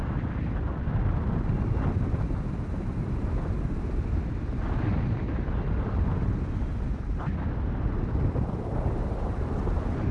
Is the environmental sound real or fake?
real